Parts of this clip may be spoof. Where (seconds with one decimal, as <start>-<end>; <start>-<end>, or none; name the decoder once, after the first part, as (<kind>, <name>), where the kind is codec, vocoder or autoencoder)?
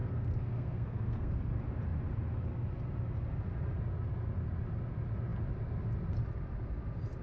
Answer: 0.0-1.4 (codec, SNAC)